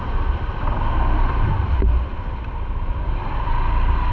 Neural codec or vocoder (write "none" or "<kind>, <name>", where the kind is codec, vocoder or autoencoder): none